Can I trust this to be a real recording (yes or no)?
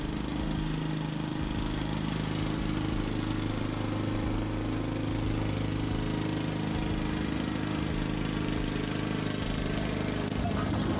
yes